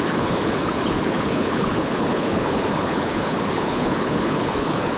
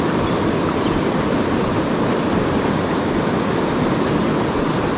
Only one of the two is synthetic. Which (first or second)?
first